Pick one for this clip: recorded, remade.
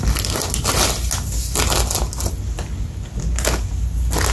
recorded